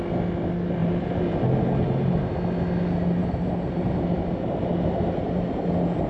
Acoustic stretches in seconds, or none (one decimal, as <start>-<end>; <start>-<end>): 0.0-0.8; 2.3-3.2; 4.0-6.1

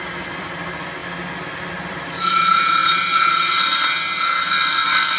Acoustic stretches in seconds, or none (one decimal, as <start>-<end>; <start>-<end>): 1.0-1.7; 2.8-4.5

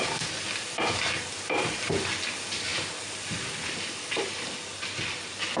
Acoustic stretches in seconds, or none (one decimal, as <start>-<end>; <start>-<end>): 0.0-5.6

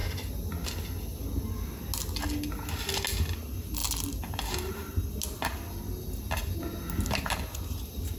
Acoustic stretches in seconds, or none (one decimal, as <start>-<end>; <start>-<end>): 0.0-8.2